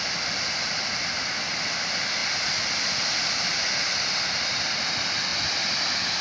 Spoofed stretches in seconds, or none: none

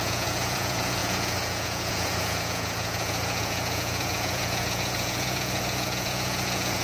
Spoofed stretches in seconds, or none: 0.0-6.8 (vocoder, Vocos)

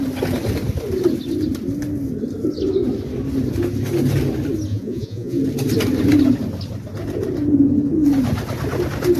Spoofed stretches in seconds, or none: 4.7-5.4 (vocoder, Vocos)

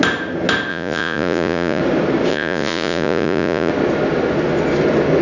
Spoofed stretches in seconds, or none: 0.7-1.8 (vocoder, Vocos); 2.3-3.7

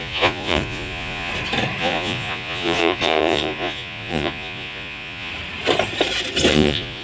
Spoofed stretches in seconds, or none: 0.0-1.3 (vocoder, Vocos); 1.8-5.3; 6.5-7.0

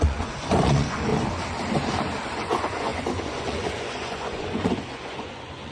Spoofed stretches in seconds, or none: 0.0-1.1 (vocoder, Vocos); 2.3-5.7